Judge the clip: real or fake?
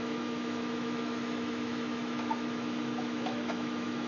fake